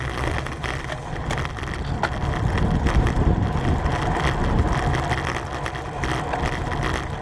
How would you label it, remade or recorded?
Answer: recorded